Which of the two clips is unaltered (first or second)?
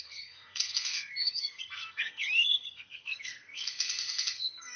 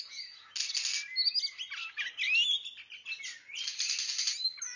second